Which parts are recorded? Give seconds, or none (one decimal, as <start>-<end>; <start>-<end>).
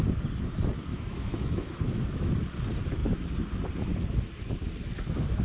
0.0-0.9; 2.3-5.4